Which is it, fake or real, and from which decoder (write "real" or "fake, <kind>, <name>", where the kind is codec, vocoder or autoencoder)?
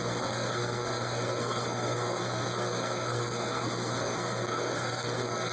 fake, codec, SNAC